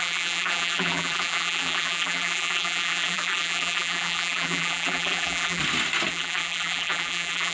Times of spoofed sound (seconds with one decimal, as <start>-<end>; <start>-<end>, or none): 0.0-5.6; 6.1-7.5